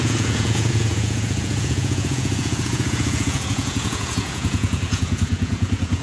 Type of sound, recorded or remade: remade